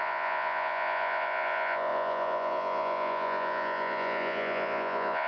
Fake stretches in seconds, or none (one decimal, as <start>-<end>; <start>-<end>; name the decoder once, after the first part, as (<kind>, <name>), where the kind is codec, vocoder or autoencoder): 0.0-5.3 (vocoder, Vocos)